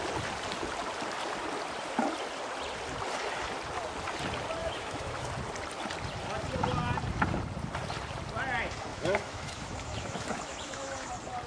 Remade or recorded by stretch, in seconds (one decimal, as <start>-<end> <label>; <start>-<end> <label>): 0.0-4.6 recorded; 4.6-5.3 remade; 5.3-8.9 recorded; 8.9-11.1 remade; 11.1-11.5 recorded